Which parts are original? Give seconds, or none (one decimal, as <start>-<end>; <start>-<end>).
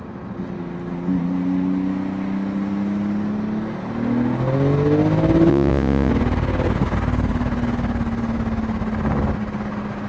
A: 0.0-5.5; 6.1-10.1